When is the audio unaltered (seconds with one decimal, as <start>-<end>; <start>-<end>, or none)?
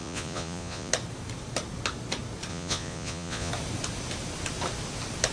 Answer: 0.9-2.5; 3.5-5.3